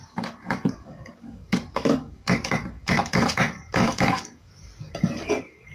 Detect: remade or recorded remade